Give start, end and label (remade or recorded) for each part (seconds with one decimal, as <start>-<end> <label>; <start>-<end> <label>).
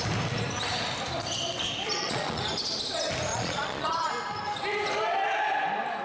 0.0-1.9 recorded; 1.9-2.4 remade; 2.4-3.3 recorded; 3.3-4.1 remade; 4.1-6.0 recorded